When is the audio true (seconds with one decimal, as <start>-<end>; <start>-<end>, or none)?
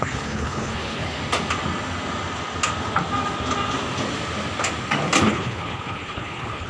1.2-5.2